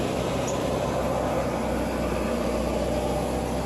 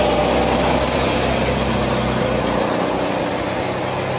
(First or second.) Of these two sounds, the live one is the first